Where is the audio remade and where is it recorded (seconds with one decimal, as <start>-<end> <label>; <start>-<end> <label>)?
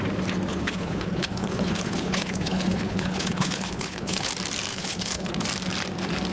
0.0-0.5 recorded; 0.5-4.3 remade; 4.3-4.7 recorded; 4.7-5.4 remade; 5.4-6.3 recorded